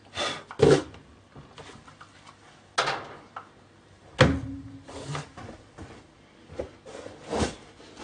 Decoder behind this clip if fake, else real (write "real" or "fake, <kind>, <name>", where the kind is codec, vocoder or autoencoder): real